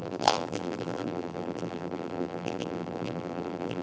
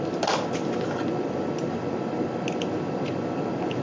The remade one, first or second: first